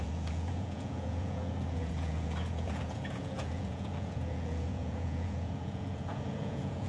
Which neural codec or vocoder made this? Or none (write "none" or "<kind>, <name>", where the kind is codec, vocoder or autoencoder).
vocoder, Vocos